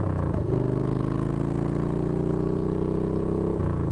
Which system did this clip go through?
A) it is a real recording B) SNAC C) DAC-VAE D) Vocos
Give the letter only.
D